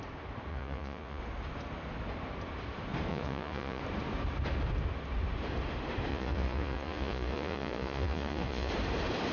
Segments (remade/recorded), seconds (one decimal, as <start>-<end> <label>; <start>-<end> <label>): 0.0-0.5 recorded; 0.5-1.2 remade; 1.2-3.1 recorded; 3.1-3.8 remade; 3.8-6.1 recorded; 6.1-8.7 remade; 8.7-9.3 recorded